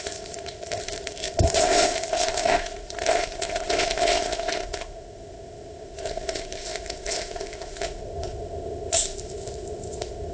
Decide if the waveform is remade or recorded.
remade